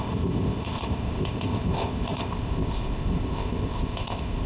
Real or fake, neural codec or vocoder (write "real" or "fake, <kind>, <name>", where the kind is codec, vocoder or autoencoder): fake, codec, ZipCodec